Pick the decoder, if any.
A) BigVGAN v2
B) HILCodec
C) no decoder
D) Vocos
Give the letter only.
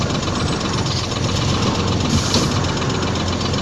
C